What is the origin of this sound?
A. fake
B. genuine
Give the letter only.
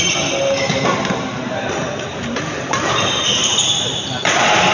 B